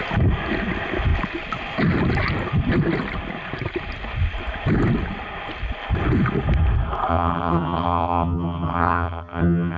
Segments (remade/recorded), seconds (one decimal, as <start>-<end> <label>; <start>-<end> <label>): 0.0-7.1 recorded; 7.1-9.8 remade